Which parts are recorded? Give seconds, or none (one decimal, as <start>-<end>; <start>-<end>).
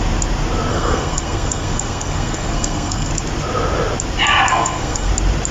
0.0-0.7; 3.1-4.5; 5.1-5.5